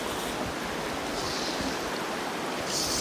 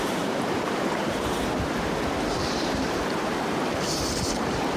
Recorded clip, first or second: first